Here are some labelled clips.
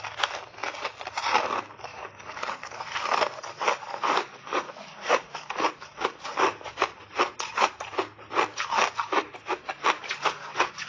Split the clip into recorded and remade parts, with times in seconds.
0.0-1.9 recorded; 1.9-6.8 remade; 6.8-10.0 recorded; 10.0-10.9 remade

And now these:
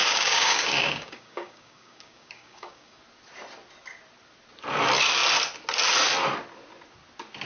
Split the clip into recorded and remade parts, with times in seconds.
0.0-3.0 remade; 3.0-7.5 recorded